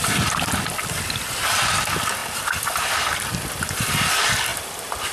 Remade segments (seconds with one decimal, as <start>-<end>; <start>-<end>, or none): none